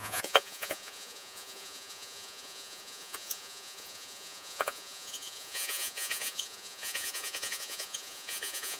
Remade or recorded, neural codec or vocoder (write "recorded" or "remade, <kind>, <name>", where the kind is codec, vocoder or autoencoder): remade, vocoder, Vocos